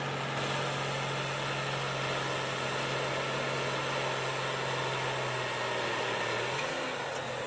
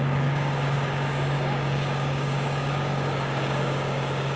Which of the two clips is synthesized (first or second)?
second